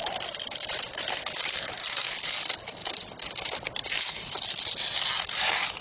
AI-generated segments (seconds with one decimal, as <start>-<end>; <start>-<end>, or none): none